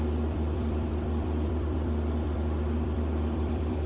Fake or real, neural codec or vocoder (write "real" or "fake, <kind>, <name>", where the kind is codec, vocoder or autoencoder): fake, vocoder, BigVGAN v2